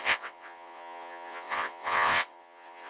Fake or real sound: fake